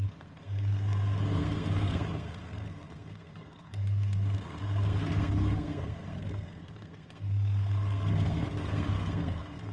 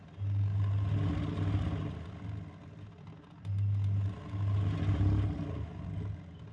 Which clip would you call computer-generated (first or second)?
first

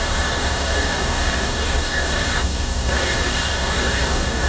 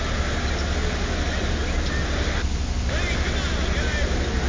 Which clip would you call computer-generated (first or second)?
first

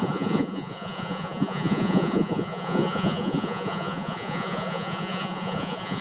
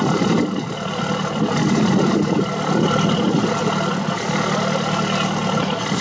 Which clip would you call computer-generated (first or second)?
first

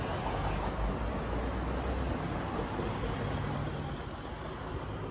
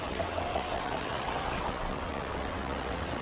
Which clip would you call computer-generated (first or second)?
second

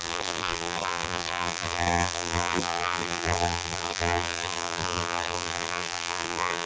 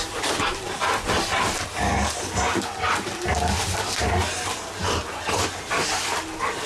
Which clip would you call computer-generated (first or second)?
first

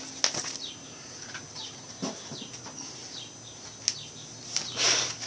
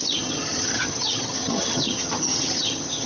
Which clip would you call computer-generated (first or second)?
second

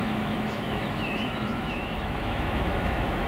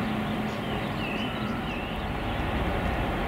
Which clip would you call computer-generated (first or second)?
first